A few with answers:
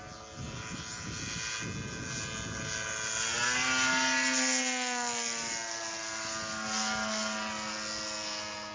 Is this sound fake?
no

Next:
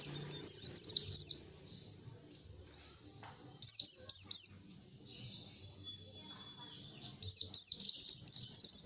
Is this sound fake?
no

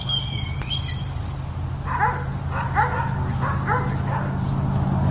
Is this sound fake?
no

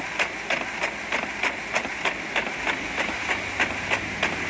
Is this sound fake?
no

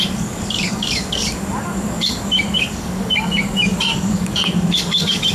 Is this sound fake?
yes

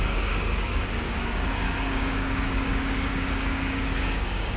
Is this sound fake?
yes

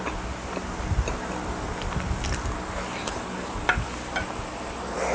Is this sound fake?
no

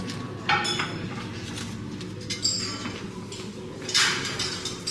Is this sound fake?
no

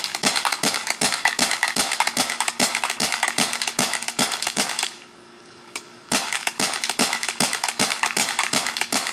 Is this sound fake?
yes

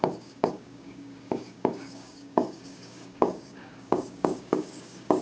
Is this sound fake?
yes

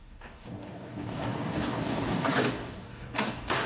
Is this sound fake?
yes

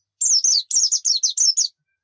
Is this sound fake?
no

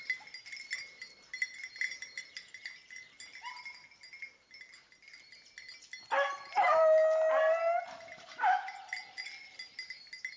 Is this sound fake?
no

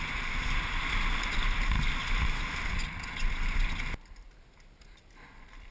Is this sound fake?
no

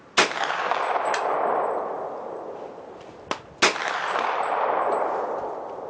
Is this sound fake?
no